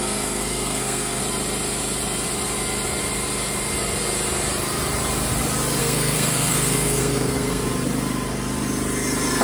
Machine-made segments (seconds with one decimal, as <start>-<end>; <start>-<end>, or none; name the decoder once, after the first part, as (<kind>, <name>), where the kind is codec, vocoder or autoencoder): 0.0-1.2 (codec, SNAC); 5.8-7.6